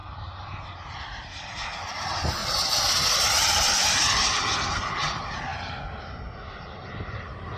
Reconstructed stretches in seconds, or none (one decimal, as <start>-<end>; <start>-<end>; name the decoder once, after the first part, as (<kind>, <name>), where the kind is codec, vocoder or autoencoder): 0.0-1.2 (vocoder, BigVGAN v2); 2.4-4.3